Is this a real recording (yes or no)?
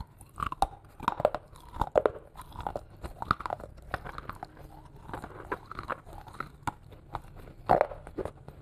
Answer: yes